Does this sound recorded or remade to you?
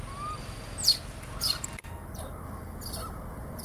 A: recorded